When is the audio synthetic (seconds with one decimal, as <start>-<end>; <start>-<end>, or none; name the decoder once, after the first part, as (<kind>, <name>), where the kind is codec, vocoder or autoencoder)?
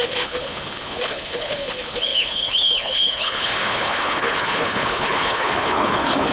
0.0-6.3 (codec, HILCodec)